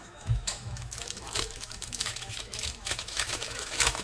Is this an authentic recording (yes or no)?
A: no